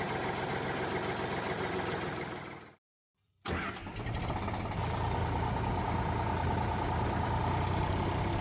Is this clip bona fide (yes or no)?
yes